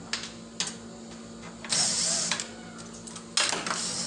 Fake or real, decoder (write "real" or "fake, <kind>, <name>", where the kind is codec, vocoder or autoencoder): real